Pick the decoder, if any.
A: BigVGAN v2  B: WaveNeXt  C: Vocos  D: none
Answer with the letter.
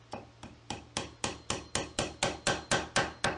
D